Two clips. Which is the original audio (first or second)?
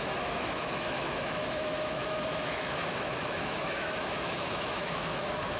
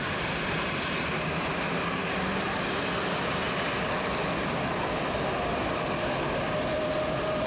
second